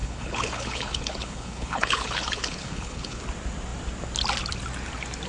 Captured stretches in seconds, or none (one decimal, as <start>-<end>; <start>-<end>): 3.2-5.3

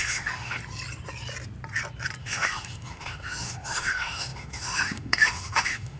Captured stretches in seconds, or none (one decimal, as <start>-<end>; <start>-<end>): 0.6-2.2